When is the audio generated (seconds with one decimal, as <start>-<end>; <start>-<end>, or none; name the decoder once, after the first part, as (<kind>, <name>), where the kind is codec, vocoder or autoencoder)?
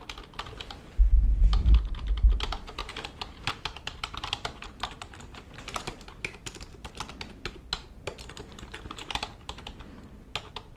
2.8-6.9 (vocoder, BigVGAN v2); 8.5-9.6